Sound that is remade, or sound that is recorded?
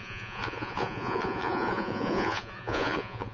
remade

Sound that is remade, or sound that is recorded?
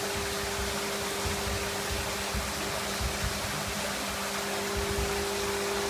recorded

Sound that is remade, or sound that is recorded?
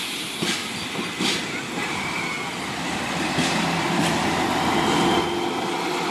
remade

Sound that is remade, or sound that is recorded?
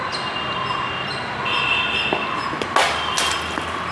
recorded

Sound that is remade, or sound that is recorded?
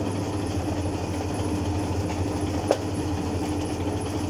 recorded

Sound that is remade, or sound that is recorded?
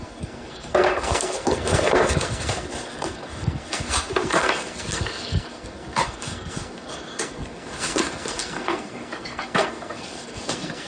remade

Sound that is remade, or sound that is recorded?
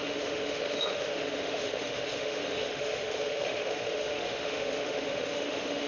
remade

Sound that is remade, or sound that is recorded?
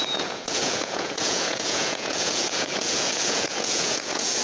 remade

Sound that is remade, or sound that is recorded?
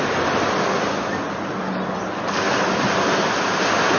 recorded